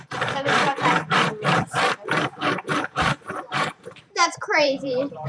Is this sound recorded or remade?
remade